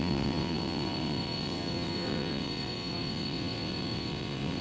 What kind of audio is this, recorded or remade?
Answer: remade